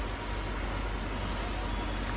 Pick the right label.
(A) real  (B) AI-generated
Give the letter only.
A